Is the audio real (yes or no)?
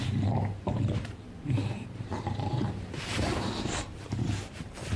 no